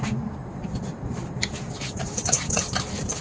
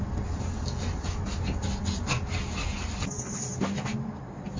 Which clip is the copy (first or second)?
first